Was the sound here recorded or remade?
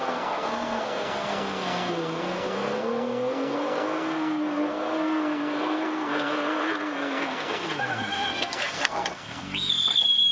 remade